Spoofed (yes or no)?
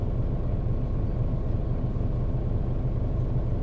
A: no